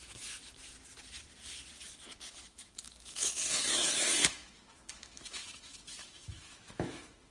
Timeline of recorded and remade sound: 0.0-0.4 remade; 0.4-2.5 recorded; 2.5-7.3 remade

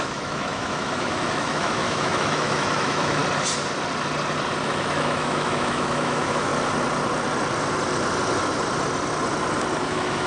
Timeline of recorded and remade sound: 0.0-3.2 remade; 3.2-4.6 recorded; 4.6-6.5 remade; 6.5-9.8 recorded; 9.8-10.3 remade

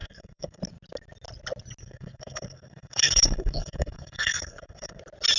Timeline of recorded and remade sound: 0.0-0.6 remade; 0.6-1.8 recorded; 1.8-5.0 remade; 5.0-5.4 recorded

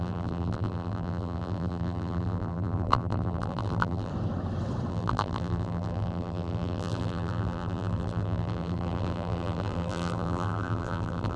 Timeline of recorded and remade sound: 0.0-4.1 remade; 4.1-4.9 recorded; 4.9-11.4 remade